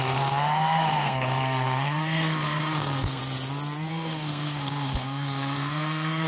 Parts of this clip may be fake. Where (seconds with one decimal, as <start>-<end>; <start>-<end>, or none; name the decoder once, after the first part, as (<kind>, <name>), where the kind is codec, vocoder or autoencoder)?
0.0-3.2 (codec, SNAC); 3.9-6.3